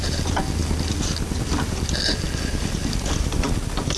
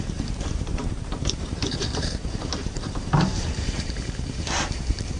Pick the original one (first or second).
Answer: first